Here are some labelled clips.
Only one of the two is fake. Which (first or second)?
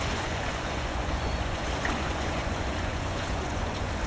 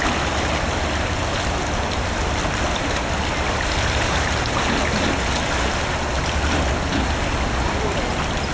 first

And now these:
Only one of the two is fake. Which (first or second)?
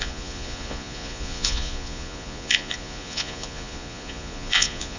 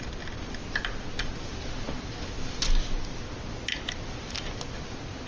first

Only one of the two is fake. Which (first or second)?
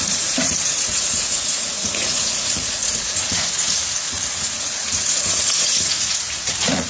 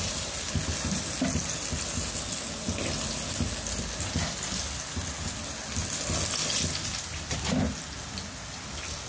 first